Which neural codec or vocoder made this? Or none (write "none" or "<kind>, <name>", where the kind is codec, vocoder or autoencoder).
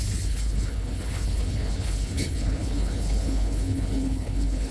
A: codec, HILCodec